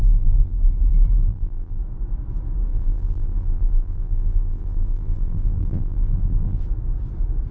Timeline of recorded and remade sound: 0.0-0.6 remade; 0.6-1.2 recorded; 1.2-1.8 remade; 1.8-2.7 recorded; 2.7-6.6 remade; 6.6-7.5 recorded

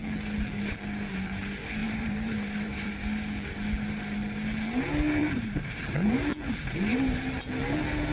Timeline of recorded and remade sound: 0.0-1.8 recorded; 1.8-2.9 remade; 2.9-5.2 recorded; 5.2-5.8 remade; 5.8-6.9 recorded; 6.9-7.4 remade; 7.4-8.1 recorded